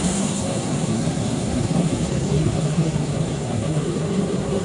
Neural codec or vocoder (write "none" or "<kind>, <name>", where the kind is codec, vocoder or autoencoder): codec, SNAC